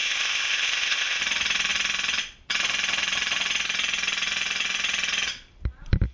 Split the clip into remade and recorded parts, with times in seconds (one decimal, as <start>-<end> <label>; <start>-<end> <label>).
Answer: 0.0-1.2 remade; 1.2-6.1 recorded